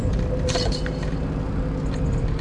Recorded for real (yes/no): yes